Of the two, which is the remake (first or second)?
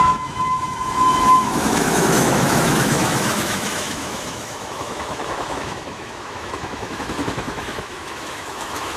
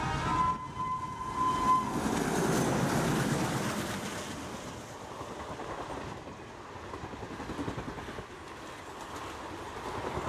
first